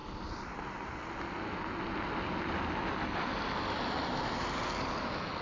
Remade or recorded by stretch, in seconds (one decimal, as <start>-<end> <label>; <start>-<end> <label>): 0.0-5.4 recorded

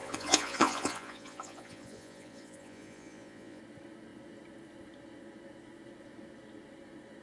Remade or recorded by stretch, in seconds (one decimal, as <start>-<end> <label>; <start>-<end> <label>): 0.0-3.6 remade; 3.6-7.2 recorded

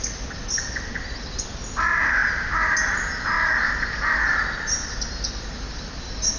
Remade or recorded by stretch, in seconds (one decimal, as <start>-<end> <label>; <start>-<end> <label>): 0.0-6.4 recorded